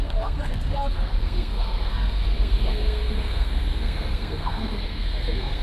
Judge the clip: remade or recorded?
remade